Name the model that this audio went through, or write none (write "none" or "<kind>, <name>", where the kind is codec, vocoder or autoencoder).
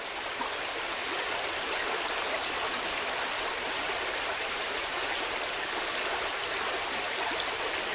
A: none